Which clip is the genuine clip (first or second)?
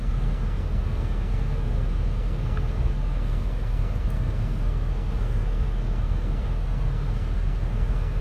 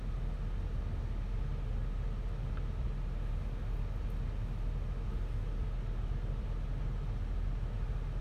second